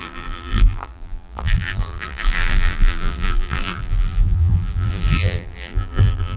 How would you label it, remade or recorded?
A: remade